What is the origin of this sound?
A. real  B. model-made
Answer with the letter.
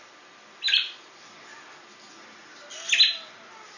A